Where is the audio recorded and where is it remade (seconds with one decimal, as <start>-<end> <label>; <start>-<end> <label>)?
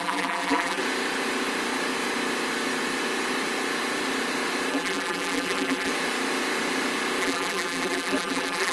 0.0-0.8 remade; 0.8-4.7 recorded; 4.7-5.9 remade; 5.9-7.2 recorded; 7.2-8.7 remade